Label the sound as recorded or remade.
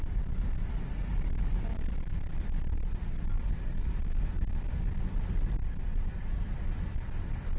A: recorded